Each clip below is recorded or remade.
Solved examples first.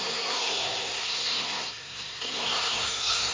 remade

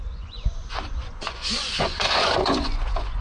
remade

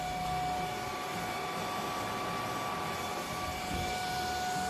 recorded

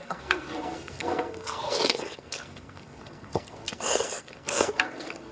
remade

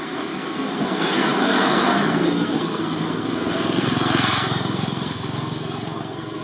remade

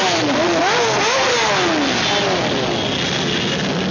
recorded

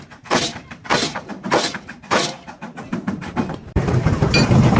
remade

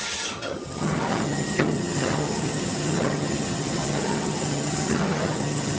remade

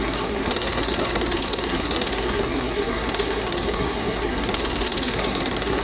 remade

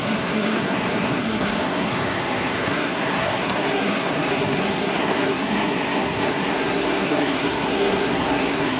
remade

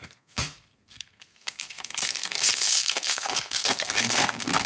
remade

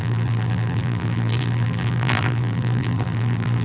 remade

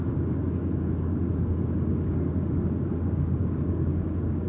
remade